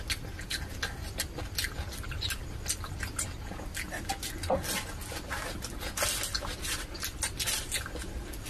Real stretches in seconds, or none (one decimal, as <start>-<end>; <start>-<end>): 0.0-8.5